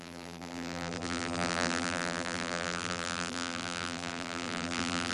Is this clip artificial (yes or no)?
yes